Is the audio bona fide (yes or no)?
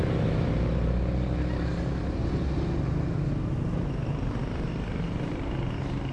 yes